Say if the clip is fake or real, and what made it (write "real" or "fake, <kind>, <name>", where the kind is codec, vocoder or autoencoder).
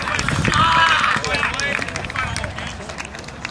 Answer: real